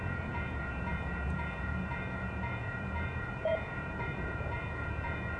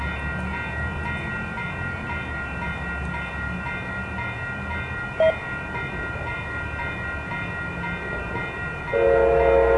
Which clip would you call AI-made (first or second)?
first